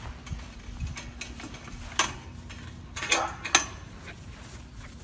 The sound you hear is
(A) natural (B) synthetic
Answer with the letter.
A